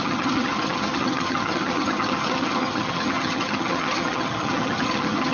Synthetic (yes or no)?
yes